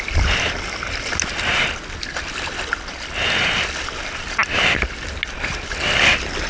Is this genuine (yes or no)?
yes